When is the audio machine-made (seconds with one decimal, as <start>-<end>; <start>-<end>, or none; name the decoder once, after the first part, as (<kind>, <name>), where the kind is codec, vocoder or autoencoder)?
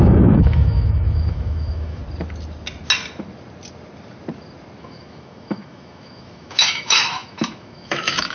0.0-2.0 (autoencoder, DAC-VAE); 4.8-8.3